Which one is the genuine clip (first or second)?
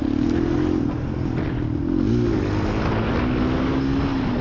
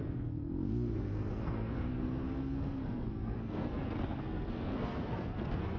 first